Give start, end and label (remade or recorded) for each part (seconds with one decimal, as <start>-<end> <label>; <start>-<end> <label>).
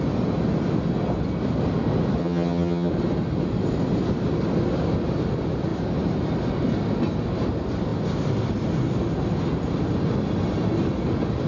0.0-2.2 recorded; 2.2-2.9 remade; 2.9-11.5 recorded